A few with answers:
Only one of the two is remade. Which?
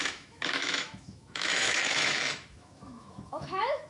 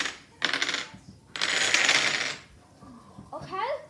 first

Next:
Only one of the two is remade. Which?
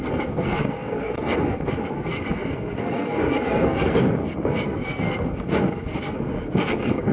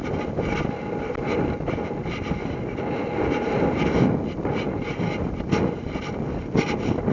first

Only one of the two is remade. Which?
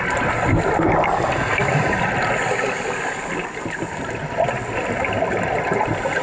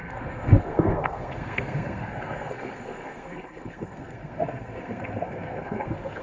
second